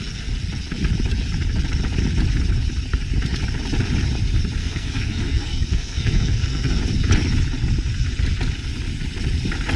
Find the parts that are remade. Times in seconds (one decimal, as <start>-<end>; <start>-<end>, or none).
4.6-6.8